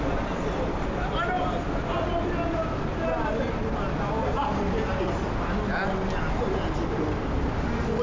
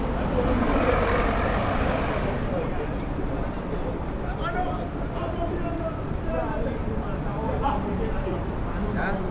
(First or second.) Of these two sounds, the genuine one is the first